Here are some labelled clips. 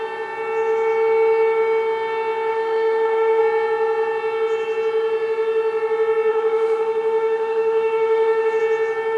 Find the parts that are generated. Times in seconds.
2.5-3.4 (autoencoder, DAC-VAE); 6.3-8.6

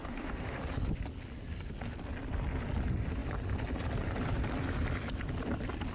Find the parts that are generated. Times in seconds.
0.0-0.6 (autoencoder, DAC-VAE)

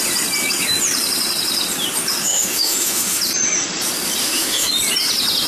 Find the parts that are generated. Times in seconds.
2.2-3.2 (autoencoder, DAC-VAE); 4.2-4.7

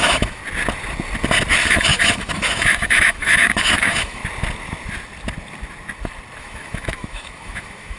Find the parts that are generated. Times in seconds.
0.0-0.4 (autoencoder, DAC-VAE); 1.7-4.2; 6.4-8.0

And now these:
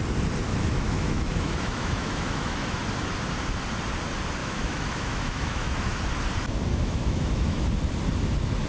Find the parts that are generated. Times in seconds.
0.5-2.8 (autoencoder, DAC-VAE); 4.4-6.0; 6.7-7.6

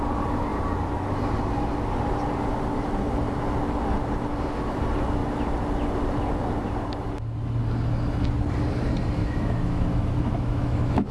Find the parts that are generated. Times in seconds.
9.2-11.1 (autoencoder, DAC-VAE)

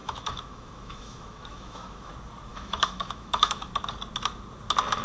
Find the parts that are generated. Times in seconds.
0.0-2.1 (autoencoder, DAC-VAE); 2.5-3.7